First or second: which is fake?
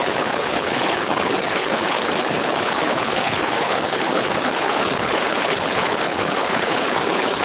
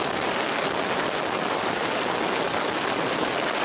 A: first